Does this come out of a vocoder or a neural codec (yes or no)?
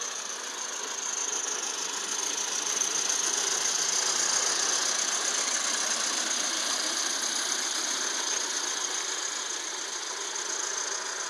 no